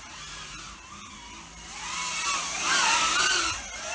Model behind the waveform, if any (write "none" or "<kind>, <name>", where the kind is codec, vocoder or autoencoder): none